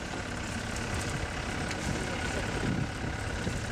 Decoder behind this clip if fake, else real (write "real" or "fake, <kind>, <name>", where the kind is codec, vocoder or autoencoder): real